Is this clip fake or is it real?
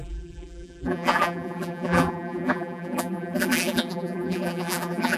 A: fake